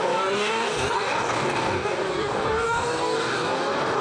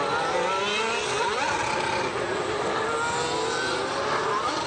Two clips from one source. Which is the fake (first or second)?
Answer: first